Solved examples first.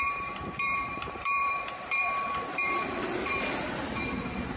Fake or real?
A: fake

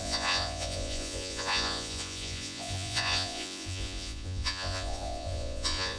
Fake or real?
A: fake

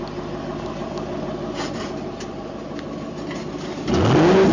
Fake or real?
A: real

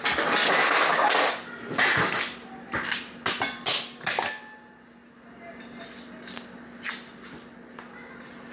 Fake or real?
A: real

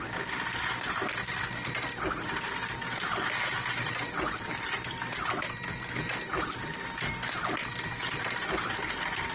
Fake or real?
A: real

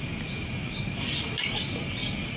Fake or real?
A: real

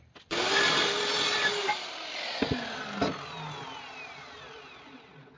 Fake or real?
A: real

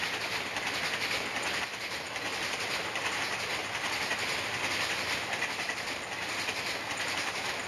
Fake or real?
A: real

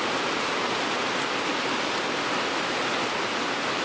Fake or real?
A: real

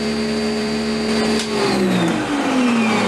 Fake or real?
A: real